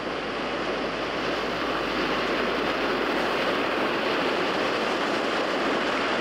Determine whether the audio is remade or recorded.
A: remade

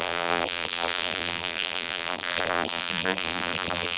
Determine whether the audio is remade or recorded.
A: remade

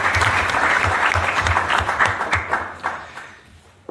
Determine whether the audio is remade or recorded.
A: remade